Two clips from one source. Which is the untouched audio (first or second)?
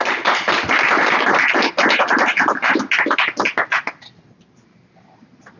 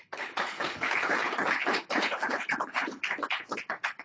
first